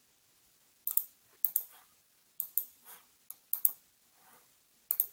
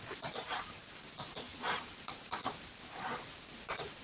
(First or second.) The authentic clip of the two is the first